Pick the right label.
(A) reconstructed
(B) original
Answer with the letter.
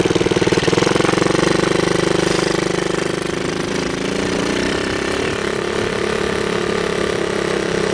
B